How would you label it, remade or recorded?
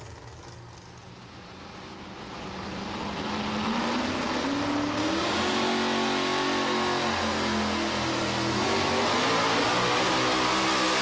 recorded